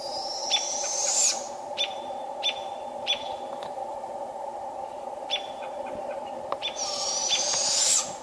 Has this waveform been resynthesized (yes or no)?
yes